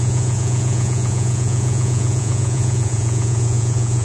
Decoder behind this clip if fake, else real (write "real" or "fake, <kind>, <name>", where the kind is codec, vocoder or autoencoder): fake, vocoder, Vocos